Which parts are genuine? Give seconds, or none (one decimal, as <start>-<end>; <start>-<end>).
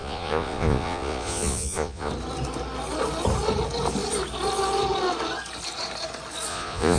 2.1-6.5